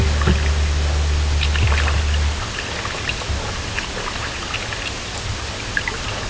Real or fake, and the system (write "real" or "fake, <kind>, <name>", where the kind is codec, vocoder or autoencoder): real